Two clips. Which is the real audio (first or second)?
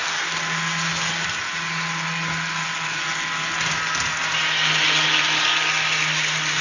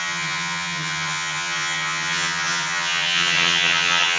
first